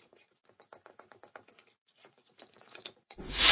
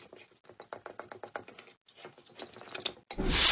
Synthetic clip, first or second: first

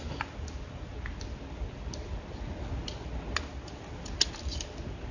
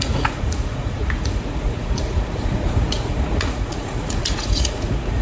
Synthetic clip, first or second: second